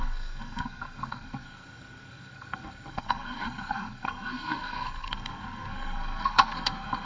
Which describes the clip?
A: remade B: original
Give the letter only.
A